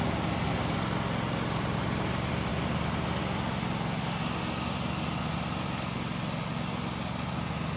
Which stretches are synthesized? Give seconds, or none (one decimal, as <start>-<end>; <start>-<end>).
none